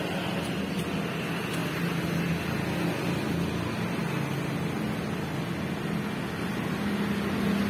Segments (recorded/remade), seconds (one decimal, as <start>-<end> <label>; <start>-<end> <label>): 0.0-7.7 recorded